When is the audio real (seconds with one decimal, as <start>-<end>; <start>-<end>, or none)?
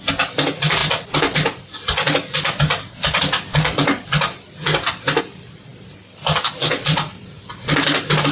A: 0.0-8.3